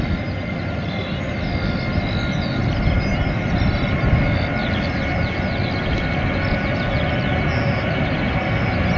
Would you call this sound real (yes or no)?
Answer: yes